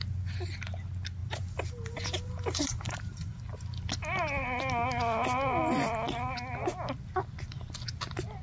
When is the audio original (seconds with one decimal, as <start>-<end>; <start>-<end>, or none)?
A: 0.0-1.2; 3.4-8.4